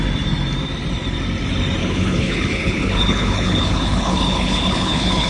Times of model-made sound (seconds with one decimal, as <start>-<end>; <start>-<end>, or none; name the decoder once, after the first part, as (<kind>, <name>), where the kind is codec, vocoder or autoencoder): 1.8-5.3 (codec, HILCodec)